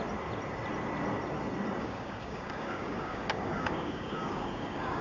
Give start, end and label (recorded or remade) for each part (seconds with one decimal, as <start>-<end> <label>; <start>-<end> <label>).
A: 0.0-1.8 recorded; 1.8-5.0 remade